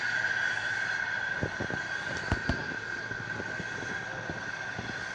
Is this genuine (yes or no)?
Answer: yes